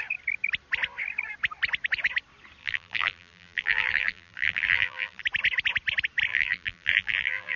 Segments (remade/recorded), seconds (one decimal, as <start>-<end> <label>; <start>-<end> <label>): 0.0-2.6 recorded; 2.6-5.2 remade; 5.2-6.3 recorded; 6.3-7.6 remade

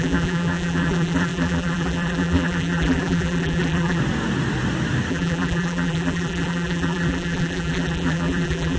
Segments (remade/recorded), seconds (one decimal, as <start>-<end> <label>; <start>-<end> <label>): 0.0-4.0 remade; 4.0-5.1 recorded; 5.1-8.8 remade

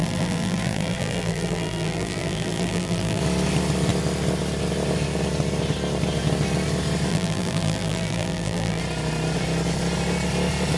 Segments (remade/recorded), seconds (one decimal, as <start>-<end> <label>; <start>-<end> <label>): 0.0-3.2 remade; 3.2-7.1 recorded; 7.1-8.8 remade; 8.8-10.8 recorded

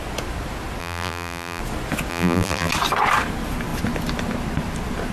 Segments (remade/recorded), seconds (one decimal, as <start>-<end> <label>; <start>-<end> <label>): 0.0-0.8 recorded; 0.8-1.6 remade; 1.6-2.1 recorded; 2.1-2.7 remade; 2.7-5.1 recorded